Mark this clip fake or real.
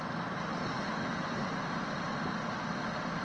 real